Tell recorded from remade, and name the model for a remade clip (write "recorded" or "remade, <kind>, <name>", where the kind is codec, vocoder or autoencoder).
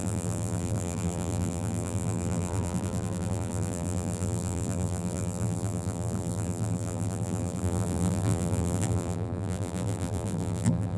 remade, vocoder, BigVGAN v2